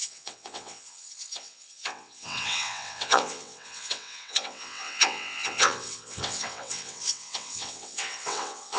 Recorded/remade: remade